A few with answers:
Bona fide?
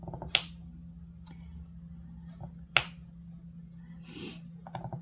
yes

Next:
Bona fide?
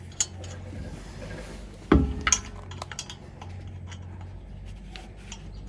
yes